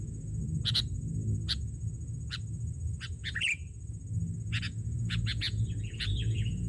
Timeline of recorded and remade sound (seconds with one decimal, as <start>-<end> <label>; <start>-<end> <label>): 0.0-0.4 remade; 0.4-3.1 recorded; 3.1-3.6 remade; 3.6-4.6 recorded; 4.6-6.7 remade